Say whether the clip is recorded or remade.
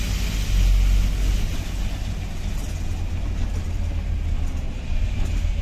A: recorded